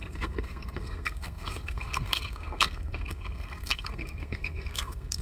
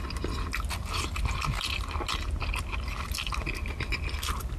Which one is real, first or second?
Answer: second